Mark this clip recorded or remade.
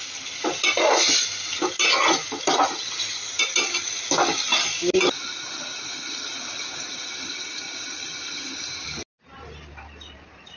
recorded